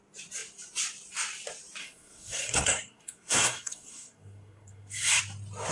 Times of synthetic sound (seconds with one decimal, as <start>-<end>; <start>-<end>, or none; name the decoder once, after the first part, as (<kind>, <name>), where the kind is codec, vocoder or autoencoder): 1.8-5.2 (codec, SNAC)

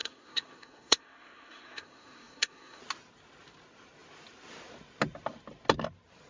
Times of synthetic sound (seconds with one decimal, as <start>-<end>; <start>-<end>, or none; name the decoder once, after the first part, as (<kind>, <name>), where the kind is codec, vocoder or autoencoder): 0.0-2.8 (codec, SNAC)

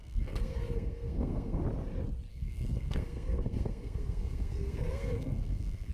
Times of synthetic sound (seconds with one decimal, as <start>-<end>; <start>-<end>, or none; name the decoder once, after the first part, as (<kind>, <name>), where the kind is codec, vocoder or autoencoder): 0.0-1.6 (codec, SNAC); 2.3-5.9

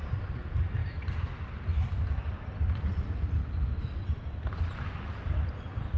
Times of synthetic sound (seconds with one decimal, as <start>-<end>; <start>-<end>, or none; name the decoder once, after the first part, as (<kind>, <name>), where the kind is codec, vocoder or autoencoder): none

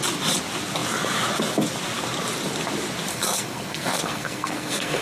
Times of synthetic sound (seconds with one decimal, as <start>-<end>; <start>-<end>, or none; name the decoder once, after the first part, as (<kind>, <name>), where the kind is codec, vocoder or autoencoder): 3.1-5.0 (codec, SNAC)

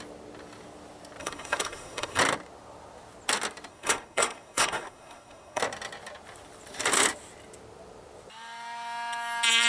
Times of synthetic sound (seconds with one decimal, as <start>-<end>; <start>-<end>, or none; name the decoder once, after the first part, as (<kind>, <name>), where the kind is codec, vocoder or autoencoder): 1.2-2.2 (codec, SNAC); 3.7-5.6

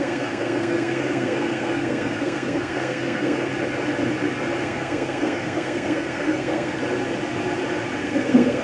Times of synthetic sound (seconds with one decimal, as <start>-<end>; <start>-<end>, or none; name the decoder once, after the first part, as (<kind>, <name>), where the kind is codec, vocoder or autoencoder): 0.0-3.5 (codec, SNAC); 4.6-6.8; 8.0-8.6

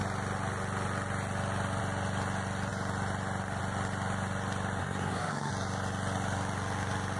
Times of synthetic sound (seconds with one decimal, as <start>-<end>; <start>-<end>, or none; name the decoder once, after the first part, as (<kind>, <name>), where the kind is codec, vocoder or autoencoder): 4.8-5.5 (codec, SNAC)